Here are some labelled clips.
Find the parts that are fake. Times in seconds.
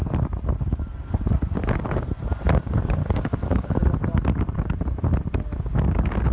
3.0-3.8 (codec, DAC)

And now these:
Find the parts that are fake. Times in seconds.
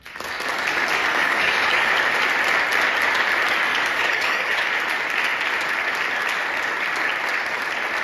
1.1-1.9 (codec, DAC); 3.7-4.7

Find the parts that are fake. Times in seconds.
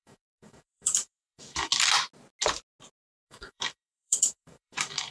0.0-1.7 (codec, DAC); 3.0-5.1